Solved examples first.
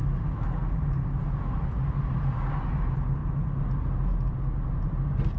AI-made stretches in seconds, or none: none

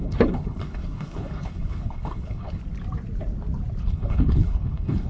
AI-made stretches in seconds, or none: 0.0-2.6 (codec, HILCodec); 3.8-5.1

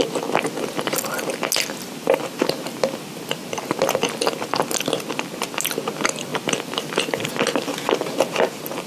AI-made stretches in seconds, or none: none

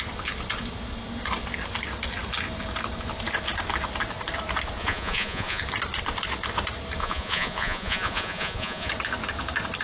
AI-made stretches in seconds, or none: 4.8-5.6 (vocoder, Vocos); 7.0-8.9